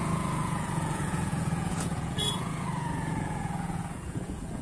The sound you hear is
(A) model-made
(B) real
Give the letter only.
A